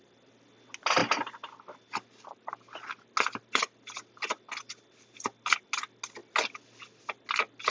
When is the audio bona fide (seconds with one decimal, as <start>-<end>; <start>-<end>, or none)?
0.0-7.7